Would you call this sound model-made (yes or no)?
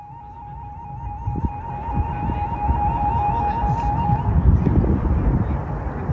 no